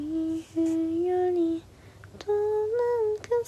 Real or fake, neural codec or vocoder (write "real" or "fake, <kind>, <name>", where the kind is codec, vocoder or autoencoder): real